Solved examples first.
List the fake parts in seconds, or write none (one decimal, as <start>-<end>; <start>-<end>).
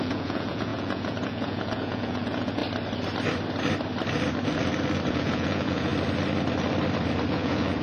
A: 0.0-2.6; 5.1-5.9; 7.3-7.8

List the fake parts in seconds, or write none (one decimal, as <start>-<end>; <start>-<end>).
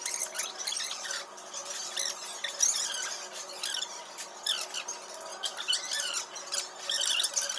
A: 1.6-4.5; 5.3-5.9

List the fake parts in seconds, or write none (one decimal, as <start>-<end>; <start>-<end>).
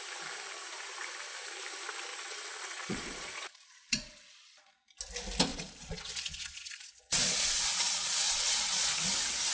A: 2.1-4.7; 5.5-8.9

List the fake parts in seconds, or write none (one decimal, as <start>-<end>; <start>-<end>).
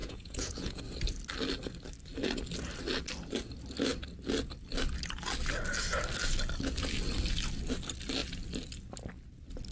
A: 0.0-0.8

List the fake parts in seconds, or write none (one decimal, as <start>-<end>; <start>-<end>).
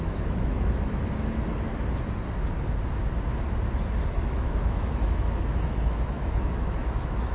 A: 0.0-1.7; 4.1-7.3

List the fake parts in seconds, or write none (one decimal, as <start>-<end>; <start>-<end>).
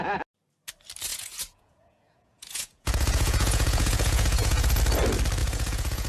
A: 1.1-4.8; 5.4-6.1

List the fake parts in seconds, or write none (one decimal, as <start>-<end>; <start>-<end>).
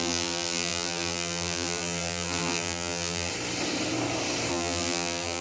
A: 0.0-3.3; 4.5-5.4